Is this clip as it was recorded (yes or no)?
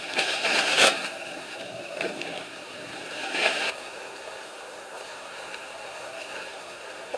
no